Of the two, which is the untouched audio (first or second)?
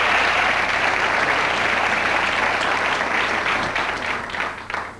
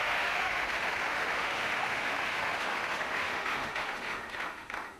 first